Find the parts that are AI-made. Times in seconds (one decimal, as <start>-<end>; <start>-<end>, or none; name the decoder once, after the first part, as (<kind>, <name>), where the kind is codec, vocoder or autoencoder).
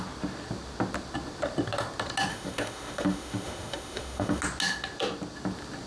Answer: 2.3-4.4 (autoencoder, DAC-VAE)